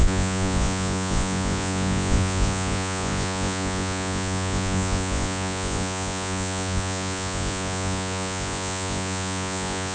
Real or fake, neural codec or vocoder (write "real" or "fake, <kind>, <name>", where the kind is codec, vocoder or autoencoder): fake, vocoder, Vocos